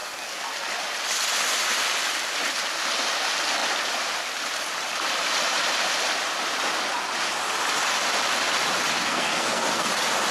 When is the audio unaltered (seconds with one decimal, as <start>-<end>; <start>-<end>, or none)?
0.6-9.0; 9.9-10.3